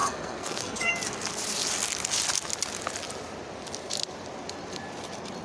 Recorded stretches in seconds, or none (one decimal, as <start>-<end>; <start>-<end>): 0.9-5.4